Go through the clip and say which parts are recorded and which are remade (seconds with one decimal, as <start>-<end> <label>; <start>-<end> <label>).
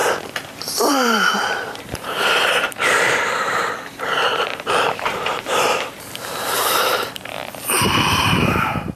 0.0-0.9 recorded; 0.9-9.0 remade